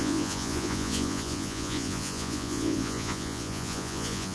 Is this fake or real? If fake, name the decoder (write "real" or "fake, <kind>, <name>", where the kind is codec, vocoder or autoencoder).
fake, vocoder, Vocos